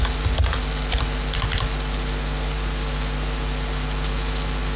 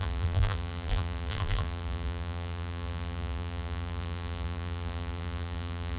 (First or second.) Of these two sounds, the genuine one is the first